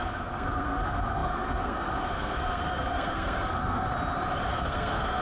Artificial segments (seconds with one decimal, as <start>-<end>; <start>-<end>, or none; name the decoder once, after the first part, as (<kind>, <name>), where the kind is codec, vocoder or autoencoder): 0.0-3.9 (codec, SNAC); 4.5-5.2